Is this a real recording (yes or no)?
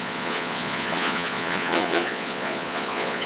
no